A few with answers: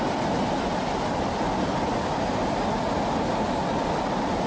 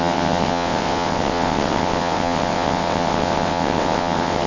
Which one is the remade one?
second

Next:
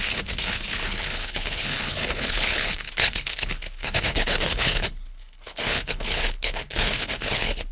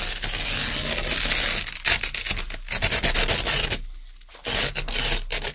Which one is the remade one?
first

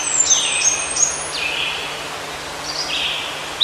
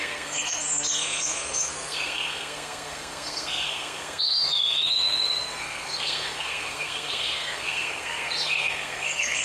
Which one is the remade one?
second